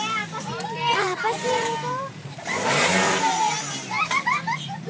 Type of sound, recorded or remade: remade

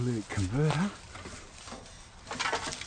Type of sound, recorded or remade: recorded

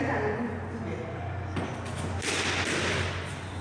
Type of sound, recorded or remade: recorded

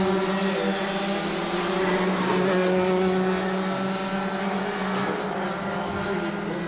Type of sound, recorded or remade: recorded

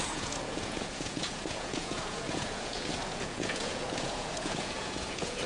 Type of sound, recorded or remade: remade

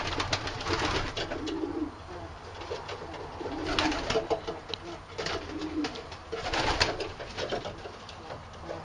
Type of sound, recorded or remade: recorded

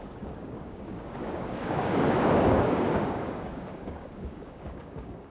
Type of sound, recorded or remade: remade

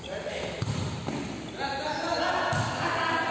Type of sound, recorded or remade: recorded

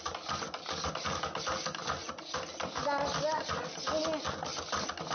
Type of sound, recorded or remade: recorded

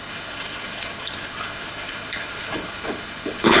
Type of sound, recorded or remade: remade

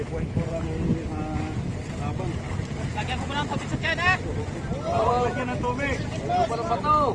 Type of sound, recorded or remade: recorded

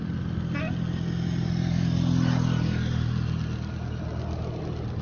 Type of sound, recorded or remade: recorded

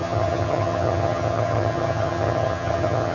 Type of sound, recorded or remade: remade